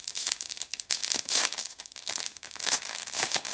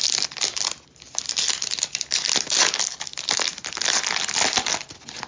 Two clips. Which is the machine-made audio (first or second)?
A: first